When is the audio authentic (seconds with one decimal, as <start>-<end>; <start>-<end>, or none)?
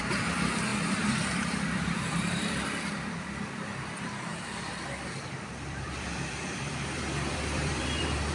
0.0-0.7; 2.9-4.3